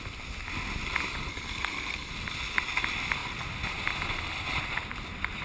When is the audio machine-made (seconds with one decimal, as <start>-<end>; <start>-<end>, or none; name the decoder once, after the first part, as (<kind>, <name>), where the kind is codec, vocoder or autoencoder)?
1.3-2.1 (codec, SNAC)